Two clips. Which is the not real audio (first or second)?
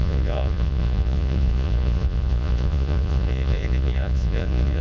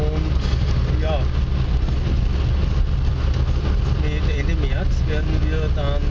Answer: first